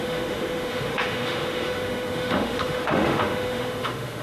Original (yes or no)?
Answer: no